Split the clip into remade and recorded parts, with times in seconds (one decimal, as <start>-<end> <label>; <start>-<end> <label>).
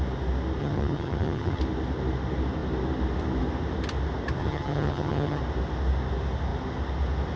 0.0-0.6 recorded; 0.6-1.6 remade; 1.6-4.4 recorded; 4.4-5.4 remade; 5.4-7.4 recorded